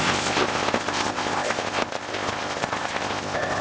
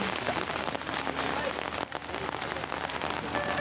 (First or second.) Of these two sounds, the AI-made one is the first